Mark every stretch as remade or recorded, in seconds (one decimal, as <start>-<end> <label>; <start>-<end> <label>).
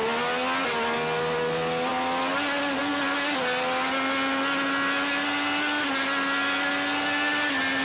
0.0-7.8 recorded